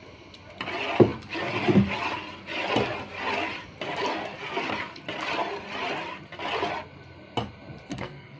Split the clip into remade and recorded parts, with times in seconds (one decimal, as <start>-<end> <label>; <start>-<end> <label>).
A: 0.0-7.9 recorded; 7.9-8.4 remade

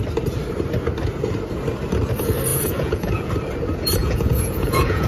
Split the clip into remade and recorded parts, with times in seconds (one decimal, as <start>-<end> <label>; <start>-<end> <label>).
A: 0.0-2.5 recorded; 2.5-3.3 remade; 3.3-4.0 recorded; 4.0-5.1 remade

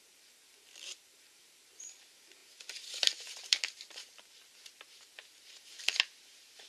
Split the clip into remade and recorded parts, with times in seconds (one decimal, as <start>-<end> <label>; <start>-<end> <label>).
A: 0.0-6.7 remade